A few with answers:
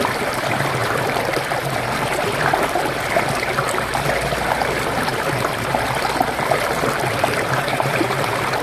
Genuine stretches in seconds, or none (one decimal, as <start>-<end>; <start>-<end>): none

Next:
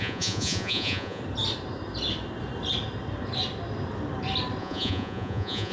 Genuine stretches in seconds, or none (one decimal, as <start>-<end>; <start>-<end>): 1.2-4.6

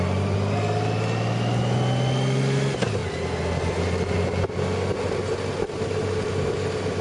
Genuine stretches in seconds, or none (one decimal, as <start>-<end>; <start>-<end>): 0.0-7.0